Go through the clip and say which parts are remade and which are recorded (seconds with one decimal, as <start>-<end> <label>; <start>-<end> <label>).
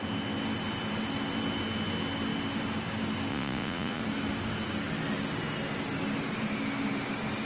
0.0-3.3 recorded; 3.3-4.0 remade; 4.0-7.5 recorded